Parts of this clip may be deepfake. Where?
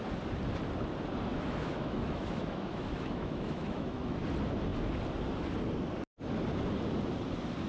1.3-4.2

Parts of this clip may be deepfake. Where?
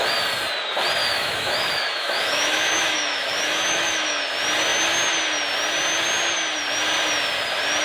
1.0-4.2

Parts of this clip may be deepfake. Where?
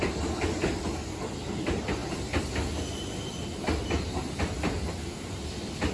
none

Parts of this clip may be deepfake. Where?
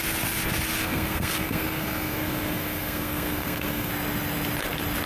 0.8-3.9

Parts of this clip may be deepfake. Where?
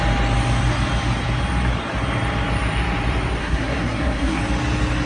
3.4-4.4